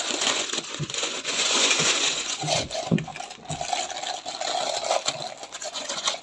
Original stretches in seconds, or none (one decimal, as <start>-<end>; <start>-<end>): 3.1-5.4